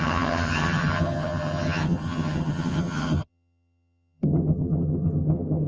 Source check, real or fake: fake